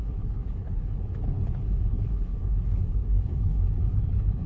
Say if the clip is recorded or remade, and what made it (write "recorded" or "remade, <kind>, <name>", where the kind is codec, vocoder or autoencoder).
remade, codec, HILCodec